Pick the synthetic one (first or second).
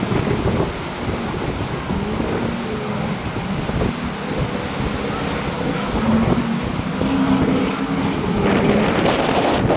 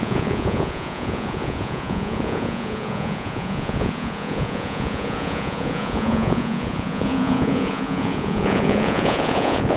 second